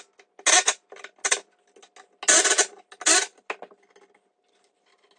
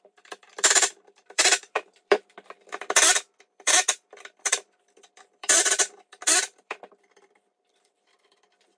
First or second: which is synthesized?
second